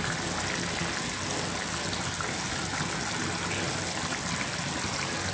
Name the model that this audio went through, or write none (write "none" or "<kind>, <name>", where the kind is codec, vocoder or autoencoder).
none